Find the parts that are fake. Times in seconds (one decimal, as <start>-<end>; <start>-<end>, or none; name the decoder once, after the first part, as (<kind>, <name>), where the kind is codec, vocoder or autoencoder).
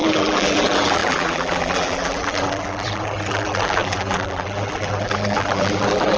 0.0-6.2 (vocoder, BigVGAN v2)